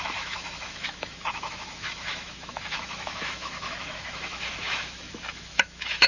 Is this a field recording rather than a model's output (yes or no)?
no